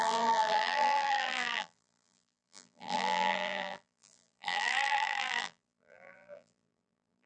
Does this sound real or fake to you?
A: fake